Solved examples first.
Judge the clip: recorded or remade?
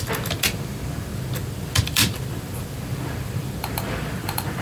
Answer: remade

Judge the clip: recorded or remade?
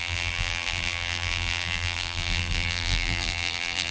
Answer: remade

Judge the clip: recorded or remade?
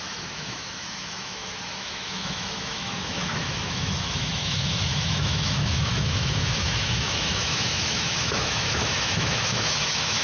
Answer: remade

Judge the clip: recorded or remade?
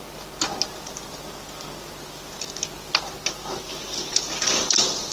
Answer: recorded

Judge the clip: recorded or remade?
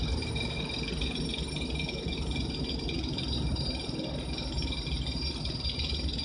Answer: recorded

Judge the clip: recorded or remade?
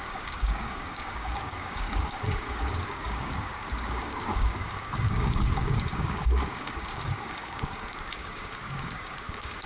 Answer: remade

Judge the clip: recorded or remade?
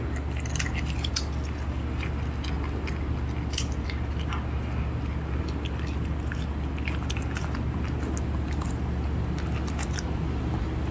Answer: recorded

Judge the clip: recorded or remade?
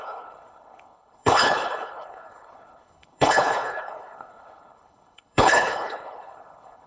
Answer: remade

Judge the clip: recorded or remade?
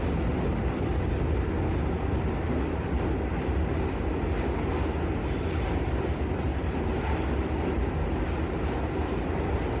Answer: recorded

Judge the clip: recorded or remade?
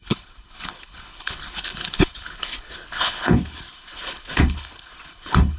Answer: remade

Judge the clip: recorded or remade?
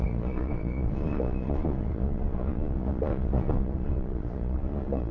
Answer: remade